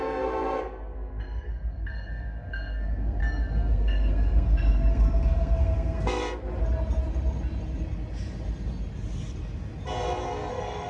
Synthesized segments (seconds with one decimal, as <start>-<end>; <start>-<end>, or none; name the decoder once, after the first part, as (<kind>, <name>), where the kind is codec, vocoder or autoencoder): 0.0-3.2 (codec, SNAC); 3.7-6.2; 10.5-10.9